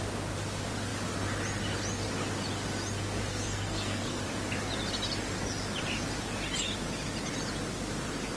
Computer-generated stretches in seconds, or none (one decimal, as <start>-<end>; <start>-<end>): 3.3-4.2